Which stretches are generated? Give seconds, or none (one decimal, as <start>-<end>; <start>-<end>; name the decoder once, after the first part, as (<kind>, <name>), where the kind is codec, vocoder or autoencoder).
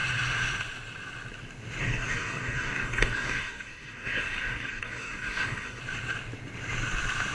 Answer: 1.8-5.8 (codec, DAC)